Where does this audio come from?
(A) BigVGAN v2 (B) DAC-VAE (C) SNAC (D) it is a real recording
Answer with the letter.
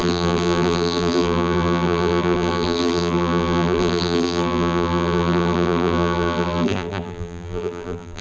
A